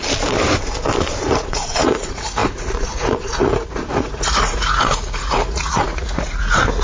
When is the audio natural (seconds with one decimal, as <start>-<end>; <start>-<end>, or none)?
0.0-1.2